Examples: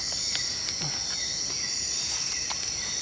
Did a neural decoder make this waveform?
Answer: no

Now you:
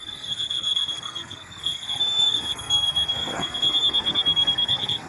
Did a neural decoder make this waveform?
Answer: yes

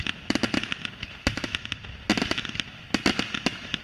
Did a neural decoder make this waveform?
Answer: no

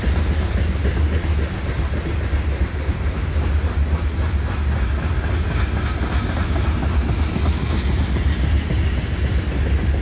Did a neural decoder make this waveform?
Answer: no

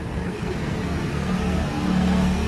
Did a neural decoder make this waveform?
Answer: yes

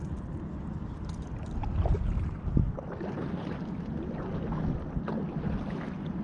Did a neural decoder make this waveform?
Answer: no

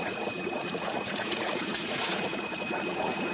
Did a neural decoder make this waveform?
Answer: yes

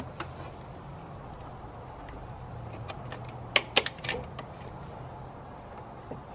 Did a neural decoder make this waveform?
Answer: no